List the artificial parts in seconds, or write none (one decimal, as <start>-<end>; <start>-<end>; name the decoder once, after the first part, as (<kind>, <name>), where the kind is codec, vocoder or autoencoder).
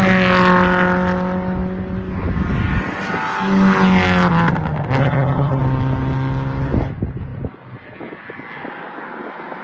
5.0-5.6 (vocoder, HiFi-GAN)